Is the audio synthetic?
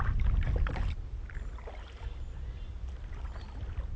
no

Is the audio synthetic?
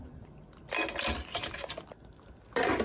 yes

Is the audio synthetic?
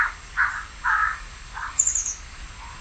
yes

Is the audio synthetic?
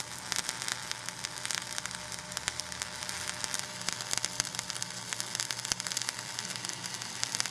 no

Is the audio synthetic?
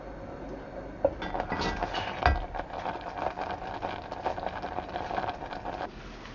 no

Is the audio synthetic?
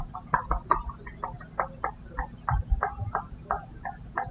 no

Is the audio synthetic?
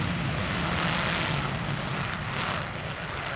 no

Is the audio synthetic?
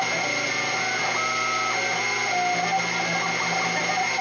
no